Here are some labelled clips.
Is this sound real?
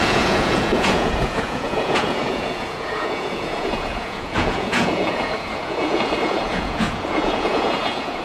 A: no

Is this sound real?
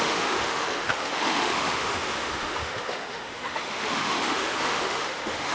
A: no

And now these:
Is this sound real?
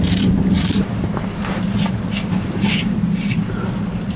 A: yes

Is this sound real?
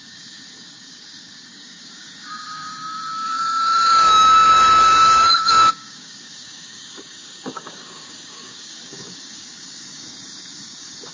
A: no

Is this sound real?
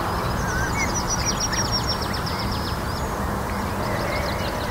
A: yes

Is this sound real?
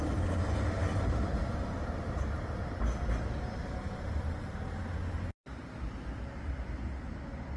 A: yes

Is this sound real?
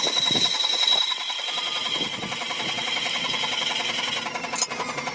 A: yes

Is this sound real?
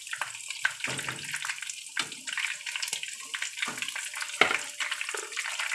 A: yes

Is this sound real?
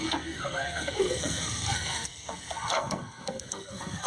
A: no